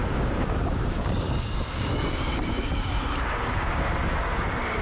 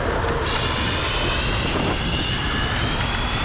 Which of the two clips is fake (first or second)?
first